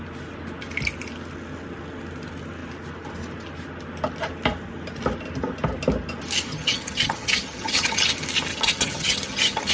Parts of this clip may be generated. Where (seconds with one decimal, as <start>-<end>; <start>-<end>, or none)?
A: 6.5-8.0; 8.5-9.7